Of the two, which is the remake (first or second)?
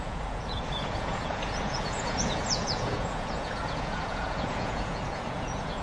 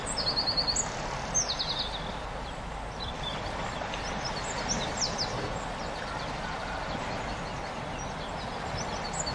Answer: first